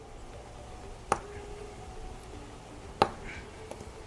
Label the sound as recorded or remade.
recorded